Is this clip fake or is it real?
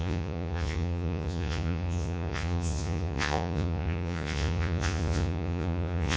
fake